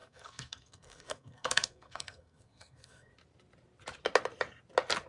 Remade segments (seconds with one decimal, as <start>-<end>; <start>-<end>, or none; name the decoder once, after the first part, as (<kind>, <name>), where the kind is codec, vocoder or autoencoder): 0.0-3.1 (codec, SNAC)